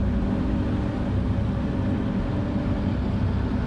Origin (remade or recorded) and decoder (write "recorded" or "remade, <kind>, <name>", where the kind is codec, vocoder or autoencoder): recorded